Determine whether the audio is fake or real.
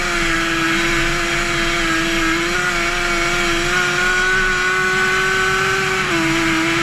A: real